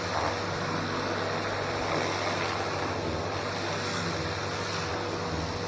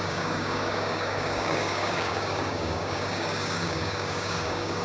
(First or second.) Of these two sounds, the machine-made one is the second